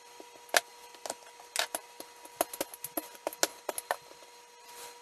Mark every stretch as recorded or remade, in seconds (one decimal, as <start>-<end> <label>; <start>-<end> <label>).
0.0-5.0 recorded